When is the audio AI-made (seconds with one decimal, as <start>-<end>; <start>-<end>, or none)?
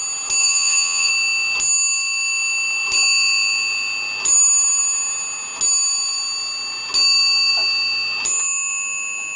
0.4-1.1